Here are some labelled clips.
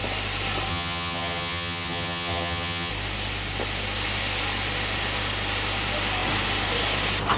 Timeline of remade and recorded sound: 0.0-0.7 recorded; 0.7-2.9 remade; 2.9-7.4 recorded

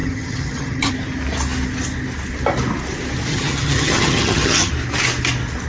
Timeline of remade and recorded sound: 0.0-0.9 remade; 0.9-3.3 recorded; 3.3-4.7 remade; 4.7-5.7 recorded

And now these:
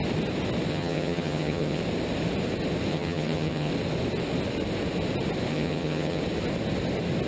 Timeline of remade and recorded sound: 0.0-0.7 recorded; 0.7-1.8 remade; 1.8-2.9 recorded; 2.9-3.7 remade; 3.7-5.5 recorded; 5.5-6.2 remade; 6.2-7.3 recorded